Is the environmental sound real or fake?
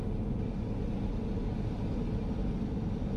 real